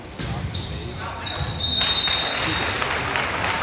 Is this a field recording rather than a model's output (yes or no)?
yes